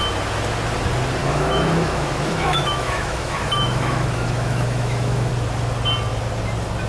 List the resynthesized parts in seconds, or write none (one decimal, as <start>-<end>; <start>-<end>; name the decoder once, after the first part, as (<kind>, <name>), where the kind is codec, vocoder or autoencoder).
1.2-5.3 (autoencoder, DAC-VAE)